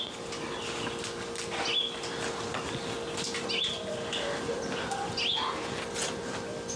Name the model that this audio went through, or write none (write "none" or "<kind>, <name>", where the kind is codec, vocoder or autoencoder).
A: none